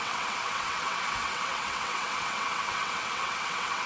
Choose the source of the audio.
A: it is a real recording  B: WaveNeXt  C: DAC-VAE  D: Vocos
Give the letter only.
B